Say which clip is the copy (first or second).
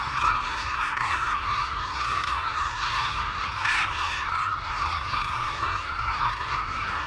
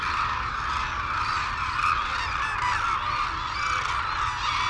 first